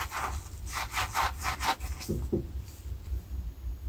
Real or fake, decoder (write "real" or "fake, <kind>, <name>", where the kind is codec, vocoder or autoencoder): real